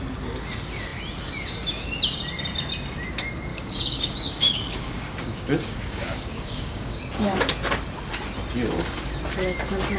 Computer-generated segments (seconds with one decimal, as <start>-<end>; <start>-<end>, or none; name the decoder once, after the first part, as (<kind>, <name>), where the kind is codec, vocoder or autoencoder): 3.5-7.0 (codec, DAC)

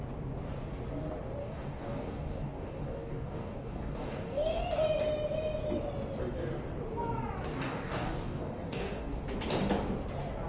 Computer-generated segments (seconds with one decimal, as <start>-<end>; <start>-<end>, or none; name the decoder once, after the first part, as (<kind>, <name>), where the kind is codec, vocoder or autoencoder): 1.4-4.6 (codec, DAC); 7.5-9.2

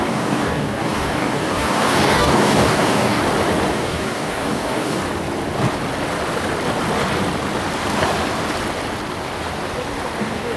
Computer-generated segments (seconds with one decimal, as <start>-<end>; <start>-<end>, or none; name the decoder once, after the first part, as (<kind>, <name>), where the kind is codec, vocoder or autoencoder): 0.0-3.2 (codec, DAC); 3.7-5.0; 10.2-10.6

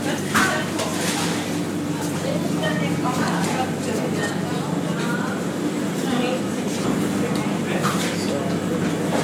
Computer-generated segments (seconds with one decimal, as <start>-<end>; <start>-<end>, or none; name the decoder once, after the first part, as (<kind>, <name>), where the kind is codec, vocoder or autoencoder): none

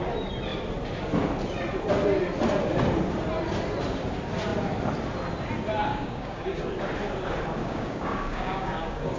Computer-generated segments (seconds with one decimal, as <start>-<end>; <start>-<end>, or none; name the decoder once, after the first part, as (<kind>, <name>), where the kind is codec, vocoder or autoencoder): 5.9-6.6 (codec, DAC); 7.6-9.2

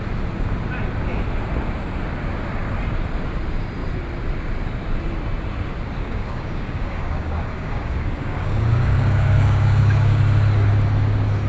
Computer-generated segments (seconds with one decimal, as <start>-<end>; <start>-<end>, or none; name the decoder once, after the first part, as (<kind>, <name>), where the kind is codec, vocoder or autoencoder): 6.0-10.2 (codec, DAC)

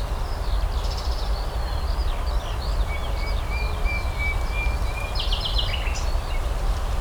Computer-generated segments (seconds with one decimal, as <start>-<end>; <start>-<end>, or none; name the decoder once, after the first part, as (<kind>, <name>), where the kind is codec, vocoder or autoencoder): none

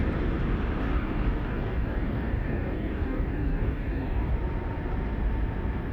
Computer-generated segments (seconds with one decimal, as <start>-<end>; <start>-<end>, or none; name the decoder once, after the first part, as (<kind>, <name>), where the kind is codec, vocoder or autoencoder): 0.8-4.3 (codec, DAC)